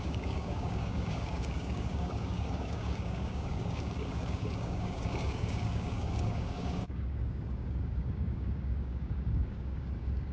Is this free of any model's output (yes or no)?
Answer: no